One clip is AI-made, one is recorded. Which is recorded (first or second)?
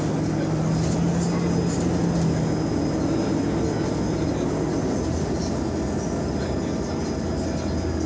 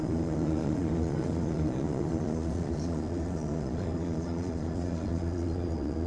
first